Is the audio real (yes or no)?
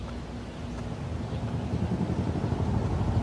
yes